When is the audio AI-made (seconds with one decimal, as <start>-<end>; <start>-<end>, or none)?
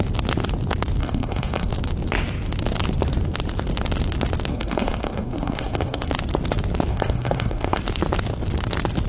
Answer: 1.0-1.7; 4.5-6.1; 6.9-7.8